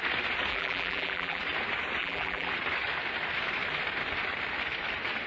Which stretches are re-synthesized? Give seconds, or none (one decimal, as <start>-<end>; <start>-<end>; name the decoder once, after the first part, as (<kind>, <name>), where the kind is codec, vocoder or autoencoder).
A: 0.5-1.4 (vocoder, BigVGAN v2); 2.0-2.5